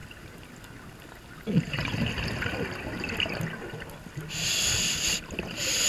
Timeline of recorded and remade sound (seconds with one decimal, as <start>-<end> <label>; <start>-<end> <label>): 0.0-5.9 recorded